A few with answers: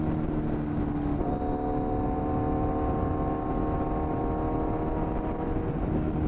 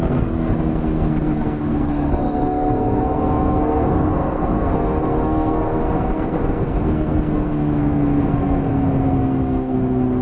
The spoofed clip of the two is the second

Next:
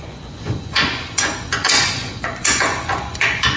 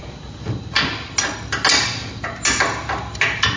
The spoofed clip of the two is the first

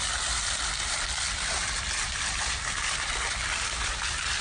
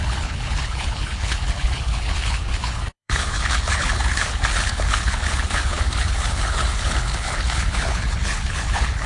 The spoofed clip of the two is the second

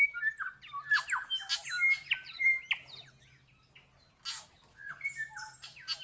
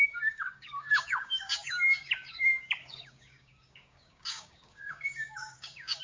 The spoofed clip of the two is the second